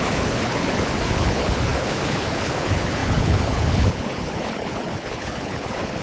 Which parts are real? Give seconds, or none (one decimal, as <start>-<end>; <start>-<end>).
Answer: none